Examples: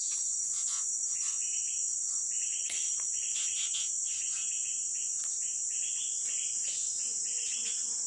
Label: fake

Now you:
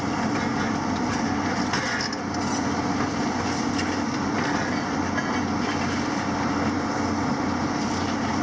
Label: real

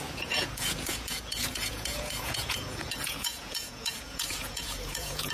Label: fake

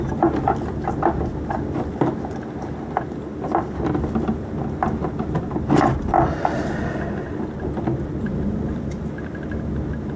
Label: real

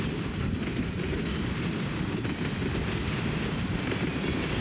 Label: real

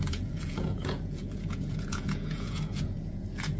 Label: fake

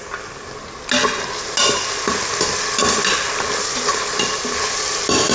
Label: real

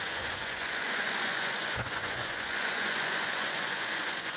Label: fake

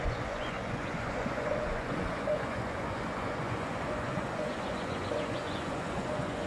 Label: fake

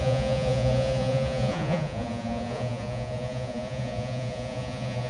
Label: fake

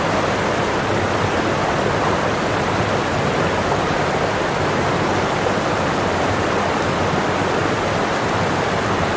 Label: real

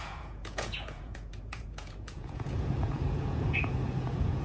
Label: fake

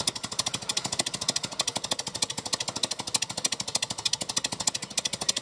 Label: real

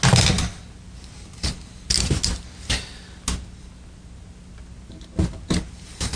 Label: real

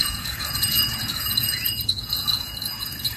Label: fake